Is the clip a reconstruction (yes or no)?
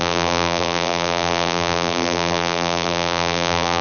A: yes